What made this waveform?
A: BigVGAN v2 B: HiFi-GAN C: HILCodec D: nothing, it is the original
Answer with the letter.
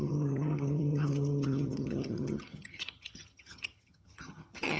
B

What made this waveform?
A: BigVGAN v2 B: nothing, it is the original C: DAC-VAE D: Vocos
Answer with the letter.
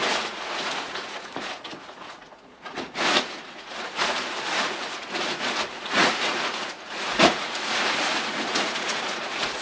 D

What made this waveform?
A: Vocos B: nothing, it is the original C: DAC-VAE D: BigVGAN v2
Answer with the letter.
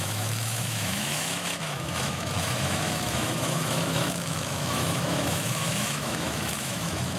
C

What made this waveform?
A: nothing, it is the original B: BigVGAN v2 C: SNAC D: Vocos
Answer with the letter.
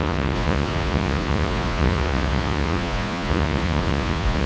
D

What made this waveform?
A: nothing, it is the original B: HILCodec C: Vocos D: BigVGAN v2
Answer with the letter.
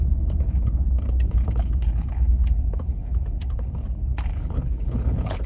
B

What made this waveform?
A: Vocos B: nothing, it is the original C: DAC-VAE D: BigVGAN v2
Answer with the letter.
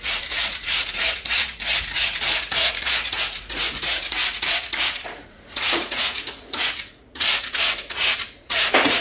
A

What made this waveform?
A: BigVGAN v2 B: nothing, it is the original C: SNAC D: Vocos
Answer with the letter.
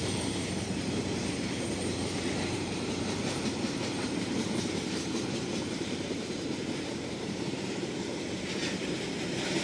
A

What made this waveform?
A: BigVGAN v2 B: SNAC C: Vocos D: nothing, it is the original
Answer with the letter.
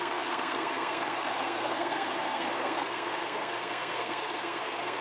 B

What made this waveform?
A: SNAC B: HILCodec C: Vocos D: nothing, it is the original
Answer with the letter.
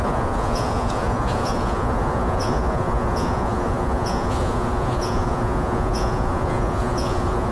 C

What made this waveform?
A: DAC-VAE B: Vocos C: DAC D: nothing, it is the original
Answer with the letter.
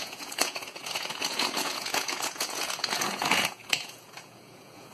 B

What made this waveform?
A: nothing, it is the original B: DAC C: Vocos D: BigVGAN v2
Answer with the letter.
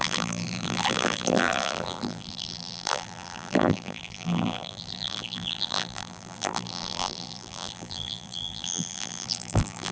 D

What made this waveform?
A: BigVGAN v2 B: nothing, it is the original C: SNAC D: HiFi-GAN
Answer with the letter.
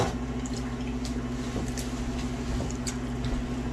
B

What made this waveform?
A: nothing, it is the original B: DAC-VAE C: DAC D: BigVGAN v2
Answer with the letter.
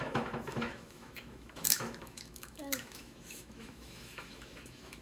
B